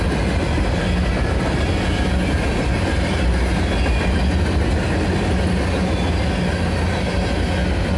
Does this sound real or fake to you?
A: real